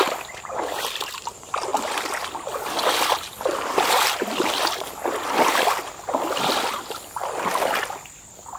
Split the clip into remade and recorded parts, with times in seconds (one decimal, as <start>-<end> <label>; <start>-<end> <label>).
0.0-5.5 recorded; 5.5-7.5 remade; 7.5-8.6 recorded